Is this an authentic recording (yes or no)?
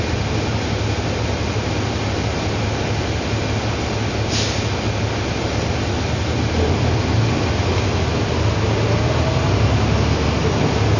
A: yes